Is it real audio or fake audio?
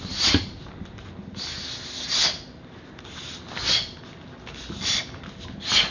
real